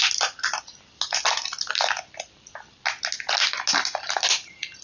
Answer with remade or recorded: recorded